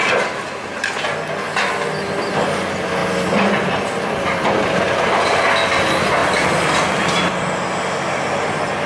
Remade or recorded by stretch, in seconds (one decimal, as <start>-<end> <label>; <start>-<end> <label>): 0.0-8.9 recorded